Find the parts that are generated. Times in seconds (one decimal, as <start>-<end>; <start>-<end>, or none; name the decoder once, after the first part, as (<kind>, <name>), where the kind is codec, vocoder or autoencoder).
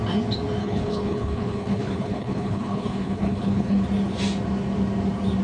0.6-3.8 (codec, HILCodec)